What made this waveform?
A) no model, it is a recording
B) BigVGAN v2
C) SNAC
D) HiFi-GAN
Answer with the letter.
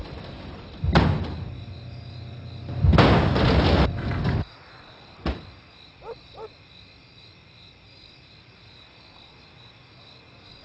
A